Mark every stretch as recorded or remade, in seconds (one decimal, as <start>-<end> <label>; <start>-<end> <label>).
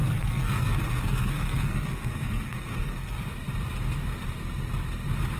0.0-3.2 remade; 3.2-5.4 recorded